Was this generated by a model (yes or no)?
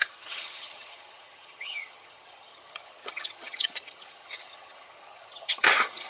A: yes